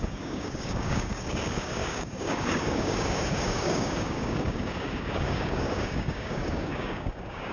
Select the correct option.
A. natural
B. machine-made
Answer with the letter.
B